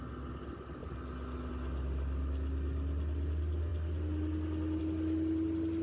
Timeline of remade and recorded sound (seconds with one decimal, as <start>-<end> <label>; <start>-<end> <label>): 0.0-5.8 recorded